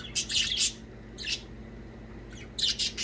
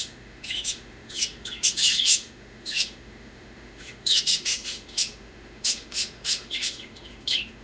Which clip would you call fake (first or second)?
second